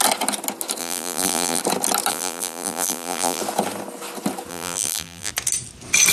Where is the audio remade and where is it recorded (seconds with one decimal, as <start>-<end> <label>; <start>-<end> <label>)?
0.0-0.8 recorded; 0.8-1.6 remade; 1.6-2.1 recorded; 2.1-3.4 remade; 3.4-4.5 recorded; 4.5-5.3 remade; 5.3-6.1 recorded